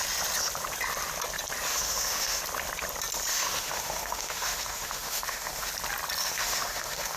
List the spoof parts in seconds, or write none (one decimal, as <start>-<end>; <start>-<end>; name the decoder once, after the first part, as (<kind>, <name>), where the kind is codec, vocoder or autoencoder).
1.7-2.4 (autoencoder, DAC-VAE); 3.3-5.7; 6.2-7.2